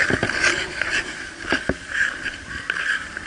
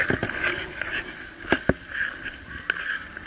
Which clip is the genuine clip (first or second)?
second